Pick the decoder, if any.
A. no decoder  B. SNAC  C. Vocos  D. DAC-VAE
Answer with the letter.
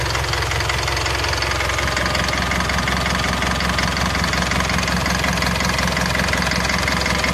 A